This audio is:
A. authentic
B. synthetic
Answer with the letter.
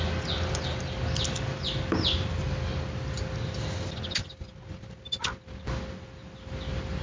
A